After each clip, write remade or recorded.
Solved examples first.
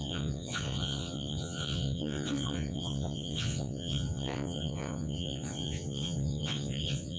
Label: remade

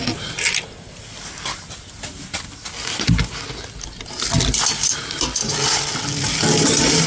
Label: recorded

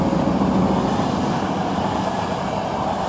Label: recorded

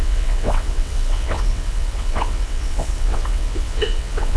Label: remade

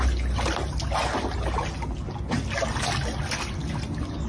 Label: recorded